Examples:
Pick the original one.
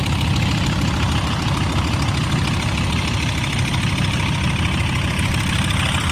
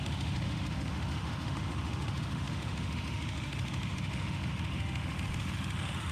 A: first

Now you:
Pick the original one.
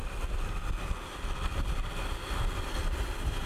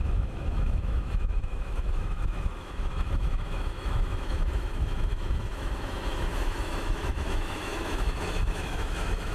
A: first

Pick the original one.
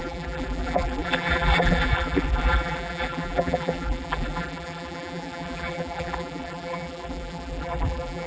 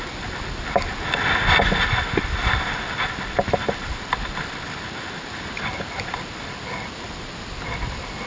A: second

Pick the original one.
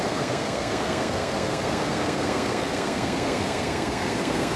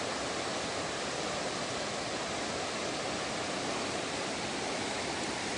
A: second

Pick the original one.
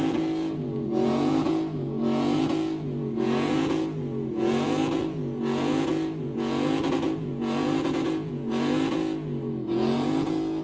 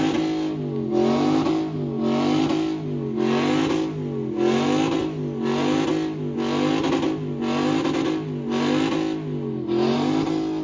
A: second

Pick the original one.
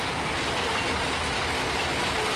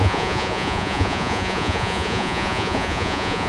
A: first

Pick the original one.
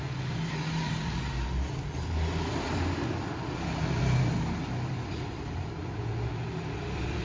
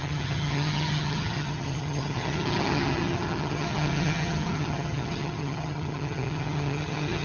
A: first